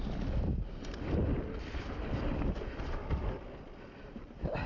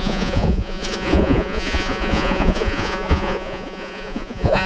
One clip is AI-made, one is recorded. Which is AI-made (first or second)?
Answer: second